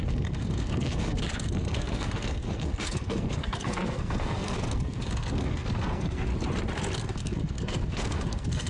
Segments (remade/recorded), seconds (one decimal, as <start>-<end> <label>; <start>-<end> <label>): 0.0-6.3 remade; 6.3-7.0 recorded; 7.0-8.7 remade